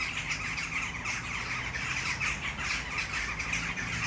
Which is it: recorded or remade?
recorded